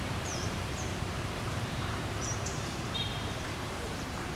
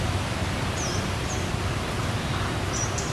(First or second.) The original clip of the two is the second